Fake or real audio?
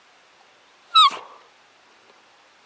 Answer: real